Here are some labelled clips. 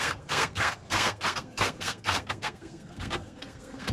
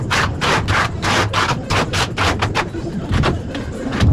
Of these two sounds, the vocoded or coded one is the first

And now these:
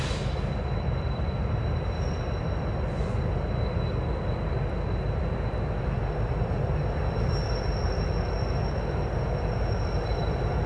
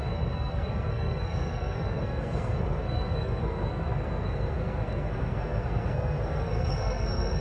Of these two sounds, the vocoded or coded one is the second